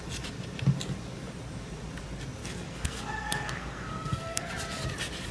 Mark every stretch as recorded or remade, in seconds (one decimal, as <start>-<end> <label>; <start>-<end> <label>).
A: 0.0-2.4 recorded; 2.4-4.5 remade; 4.5-5.3 recorded

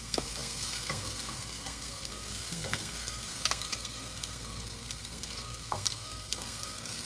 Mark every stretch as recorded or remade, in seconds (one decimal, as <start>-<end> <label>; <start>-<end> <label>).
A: 0.0-7.1 remade

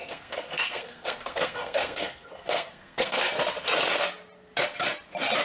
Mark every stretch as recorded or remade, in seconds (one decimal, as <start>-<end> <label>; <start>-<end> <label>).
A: 0.0-3.2 remade; 3.2-5.4 recorded

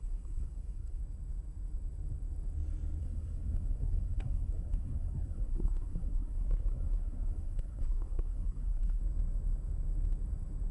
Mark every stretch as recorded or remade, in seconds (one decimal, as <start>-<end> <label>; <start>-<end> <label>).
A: 0.0-1.0 remade; 1.0-3.0 recorded; 3.0-9.0 remade; 9.0-10.7 recorded

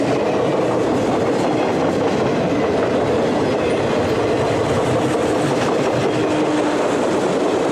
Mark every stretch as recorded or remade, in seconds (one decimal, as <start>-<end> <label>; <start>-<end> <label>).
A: 0.0-7.7 recorded

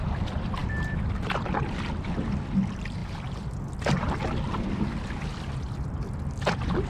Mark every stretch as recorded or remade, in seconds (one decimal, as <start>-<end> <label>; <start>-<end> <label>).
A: 0.0-6.9 recorded